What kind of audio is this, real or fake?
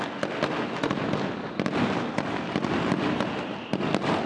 real